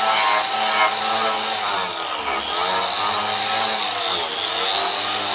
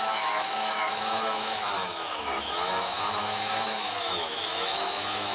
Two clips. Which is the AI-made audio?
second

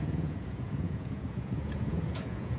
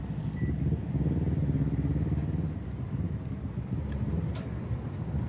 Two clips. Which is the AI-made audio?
first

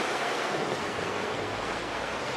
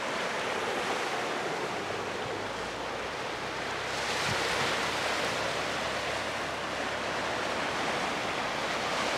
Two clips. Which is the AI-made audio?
first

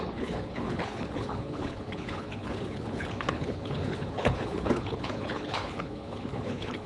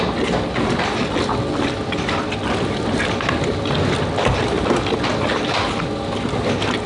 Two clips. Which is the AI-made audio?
first